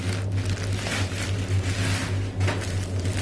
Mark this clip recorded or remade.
recorded